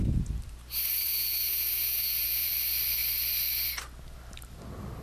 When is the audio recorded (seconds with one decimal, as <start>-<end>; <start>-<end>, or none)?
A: 0.0-1.1; 2.5-5.0